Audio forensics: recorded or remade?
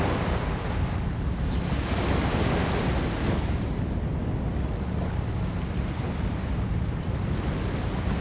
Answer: recorded